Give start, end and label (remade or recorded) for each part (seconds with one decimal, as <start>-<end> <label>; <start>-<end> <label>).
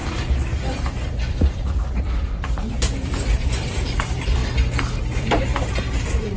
0.0-1.3 recorded; 1.3-4.4 remade; 4.4-5.0 recorded; 5.0-6.4 remade